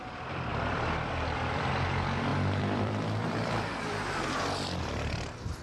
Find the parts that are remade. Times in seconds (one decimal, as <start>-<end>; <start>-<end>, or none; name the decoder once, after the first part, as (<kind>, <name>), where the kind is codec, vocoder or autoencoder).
0.5-1.7 (vocoder, BigVGAN v2); 2.3-4.4